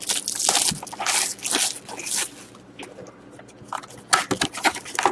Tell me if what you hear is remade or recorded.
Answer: recorded